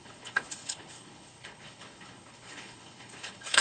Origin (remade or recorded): remade